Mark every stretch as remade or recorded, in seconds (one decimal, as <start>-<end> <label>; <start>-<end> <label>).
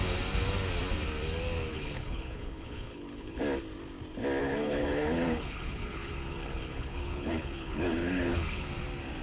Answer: 0.0-1.7 recorded; 1.7-3.4 remade; 3.4-4.4 recorded; 4.4-8.7 remade; 8.7-9.2 recorded